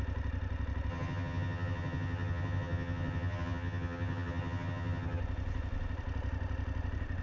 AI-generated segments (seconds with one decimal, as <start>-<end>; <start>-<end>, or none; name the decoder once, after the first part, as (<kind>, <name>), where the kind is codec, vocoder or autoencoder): 0.9-5.2 (vocoder, HiFi-GAN)